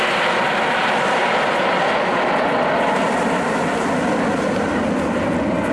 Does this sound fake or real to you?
real